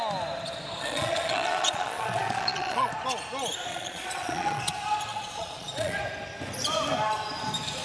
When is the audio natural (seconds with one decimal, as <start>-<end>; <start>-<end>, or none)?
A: 0.0-0.8; 2.9-3.7; 4.6-5.1; 6.0-7.8